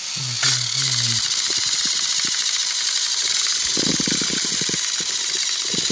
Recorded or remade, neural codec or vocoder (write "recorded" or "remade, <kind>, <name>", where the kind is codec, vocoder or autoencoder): recorded